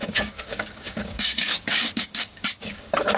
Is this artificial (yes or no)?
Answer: yes